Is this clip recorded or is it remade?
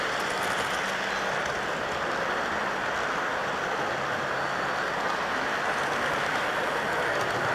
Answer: recorded